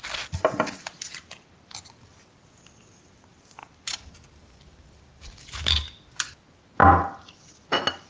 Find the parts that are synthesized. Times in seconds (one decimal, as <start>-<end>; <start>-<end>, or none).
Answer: none